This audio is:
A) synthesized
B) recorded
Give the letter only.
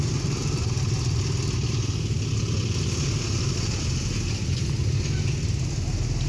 B